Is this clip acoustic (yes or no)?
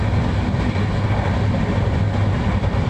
yes